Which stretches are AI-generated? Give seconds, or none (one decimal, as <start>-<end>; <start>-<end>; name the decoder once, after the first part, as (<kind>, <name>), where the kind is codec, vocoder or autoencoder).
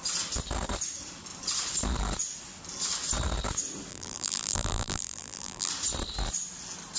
3.9-5.7 (vocoder, BigVGAN v2)